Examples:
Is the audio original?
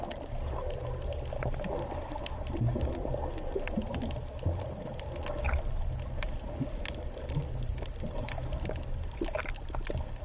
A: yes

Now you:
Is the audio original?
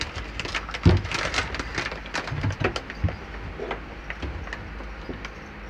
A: yes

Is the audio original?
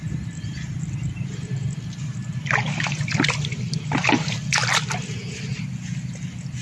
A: yes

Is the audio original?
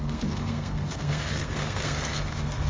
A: no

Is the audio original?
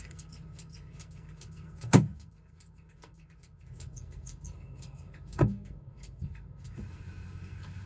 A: no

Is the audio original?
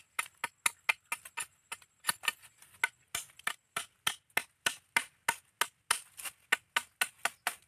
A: yes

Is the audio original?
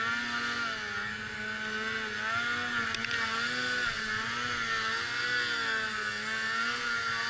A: yes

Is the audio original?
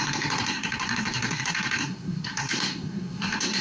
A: no